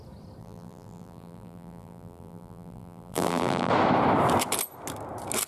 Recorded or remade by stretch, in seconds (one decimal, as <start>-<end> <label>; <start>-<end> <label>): 0.0-0.4 recorded; 0.4-3.7 remade; 3.7-5.5 recorded